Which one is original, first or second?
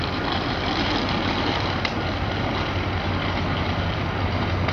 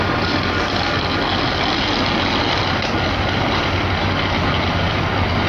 second